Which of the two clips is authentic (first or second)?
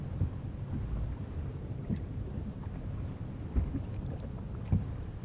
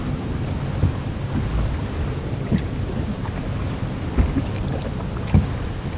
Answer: second